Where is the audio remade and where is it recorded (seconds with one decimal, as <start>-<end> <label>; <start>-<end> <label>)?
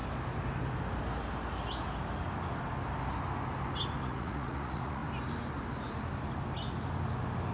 0.0-4.0 recorded; 4.0-5.0 remade; 5.0-7.5 recorded